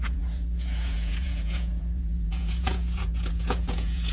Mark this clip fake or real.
fake